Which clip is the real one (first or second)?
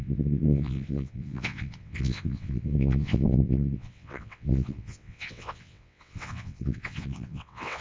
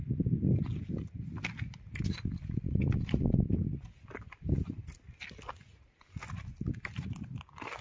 second